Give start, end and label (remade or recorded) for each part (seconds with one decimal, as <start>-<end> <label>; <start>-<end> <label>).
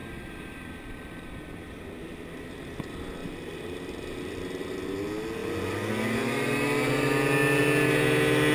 0.0-1.9 remade; 1.9-3.2 recorded; 3.2-3.8 remade; 3.8-8.5 recorded